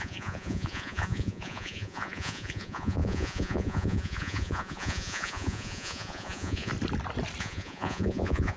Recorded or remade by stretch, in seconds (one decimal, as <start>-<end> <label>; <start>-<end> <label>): 0.0-6.7 remade; 6.7-7.4 recorded; 7.4-8.6 remade